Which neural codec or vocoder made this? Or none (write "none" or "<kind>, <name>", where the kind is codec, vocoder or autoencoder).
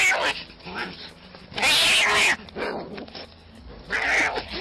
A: none